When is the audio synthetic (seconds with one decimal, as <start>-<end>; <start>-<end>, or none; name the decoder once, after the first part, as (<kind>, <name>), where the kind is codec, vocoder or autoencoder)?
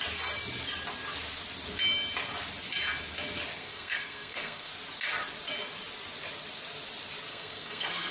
3.6-4.7 (codec, SNAC); 7.3-8.1